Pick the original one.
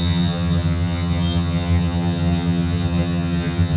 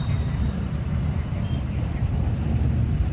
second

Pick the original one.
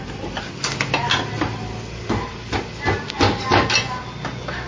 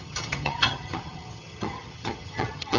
first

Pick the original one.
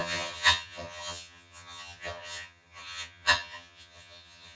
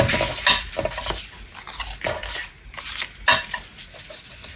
second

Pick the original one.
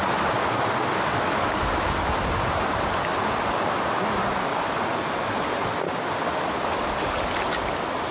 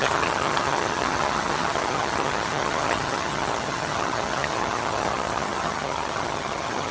first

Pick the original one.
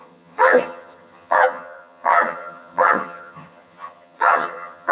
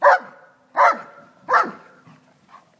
second